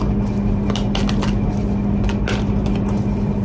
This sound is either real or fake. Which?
real